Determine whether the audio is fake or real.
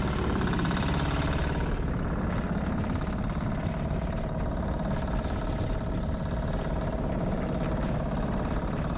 real